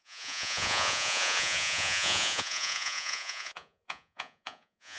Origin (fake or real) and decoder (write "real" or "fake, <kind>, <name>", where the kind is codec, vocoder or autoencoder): fake, vocoder, Vocos